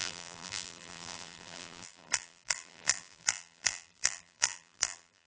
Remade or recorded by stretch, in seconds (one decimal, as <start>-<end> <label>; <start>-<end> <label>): 0.0-5.3 remade